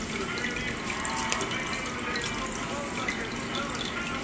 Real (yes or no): yes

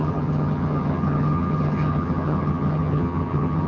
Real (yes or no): no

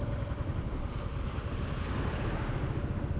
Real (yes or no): yes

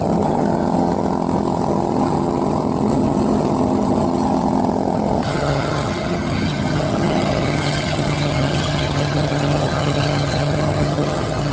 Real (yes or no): no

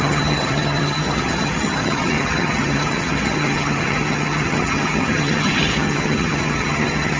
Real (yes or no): no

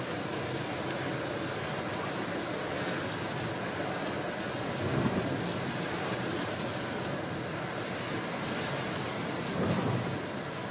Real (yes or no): yes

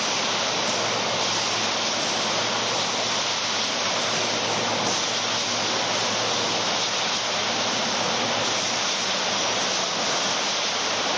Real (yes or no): yes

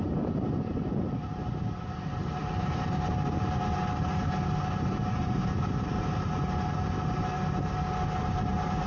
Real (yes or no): yes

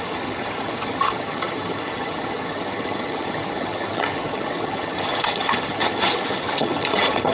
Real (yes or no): no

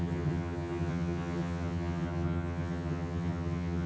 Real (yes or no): no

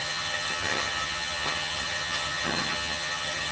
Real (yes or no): no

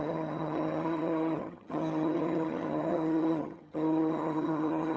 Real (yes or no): no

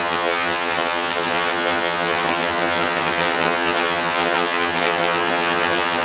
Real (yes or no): no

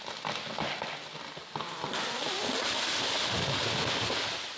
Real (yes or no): yes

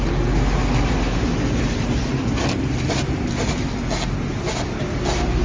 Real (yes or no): yes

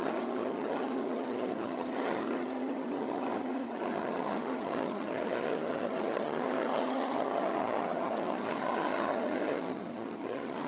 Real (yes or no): no